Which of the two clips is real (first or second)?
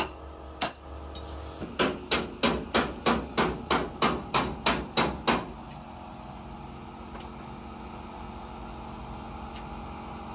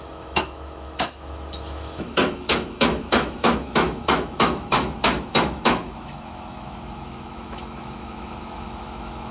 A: first